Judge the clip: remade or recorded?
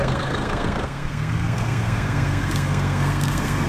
remade